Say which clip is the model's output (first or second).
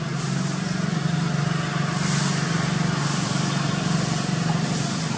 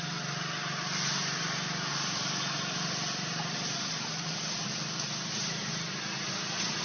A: second